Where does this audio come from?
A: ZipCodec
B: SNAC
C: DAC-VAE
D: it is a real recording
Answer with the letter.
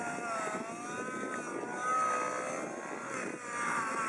D